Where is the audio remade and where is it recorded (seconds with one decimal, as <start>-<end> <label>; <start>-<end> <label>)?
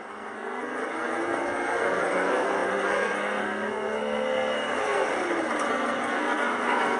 0.0-5.1 remade; 5.1-5.7 recorded; 5.7-7.0 remade